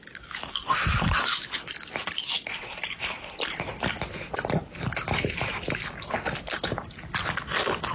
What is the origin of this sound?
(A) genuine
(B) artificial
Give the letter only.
A